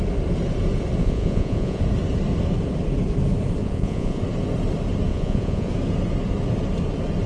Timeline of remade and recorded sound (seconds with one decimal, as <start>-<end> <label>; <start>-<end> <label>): 0.0-1.0 recorded; 1.0-1.8 remade; 1.8-3.6 recorded; 3.6-4.2 remade; 4.2-5.1 recorded; 5.1-5.7 remade; 5.7-7.3 recorded